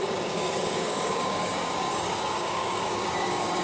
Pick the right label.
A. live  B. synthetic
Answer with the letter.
B